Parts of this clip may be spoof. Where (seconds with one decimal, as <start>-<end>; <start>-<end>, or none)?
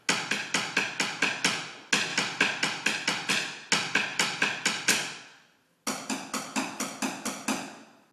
2.1-3.3; 4.1-5.2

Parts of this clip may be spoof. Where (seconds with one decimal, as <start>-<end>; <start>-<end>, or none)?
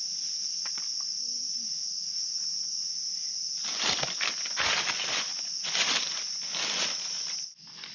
none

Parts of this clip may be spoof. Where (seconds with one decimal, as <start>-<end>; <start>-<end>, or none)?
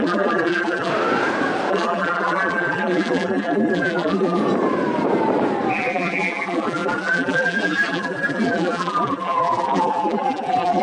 0.0-0.9; 1.7-4.4; 5.7-10.8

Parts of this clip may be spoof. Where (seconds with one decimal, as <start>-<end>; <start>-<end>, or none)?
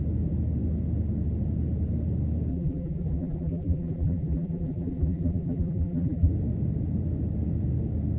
2.5-6.3